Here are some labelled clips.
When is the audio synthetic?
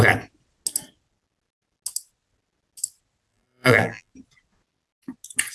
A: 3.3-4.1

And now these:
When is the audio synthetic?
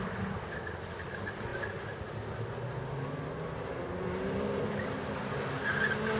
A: none